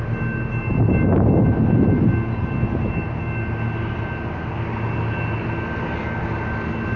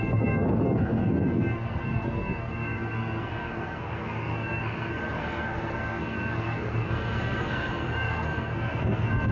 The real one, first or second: first